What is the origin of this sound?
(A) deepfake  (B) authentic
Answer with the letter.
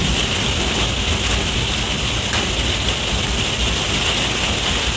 B